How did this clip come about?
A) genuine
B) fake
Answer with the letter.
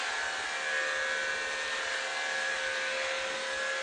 A